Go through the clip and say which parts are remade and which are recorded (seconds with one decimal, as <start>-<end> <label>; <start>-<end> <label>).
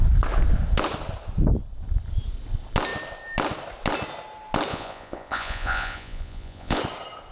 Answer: 0.0-4.7 recorded; 4.7-6.8 remade; 6.8-7.3 recorded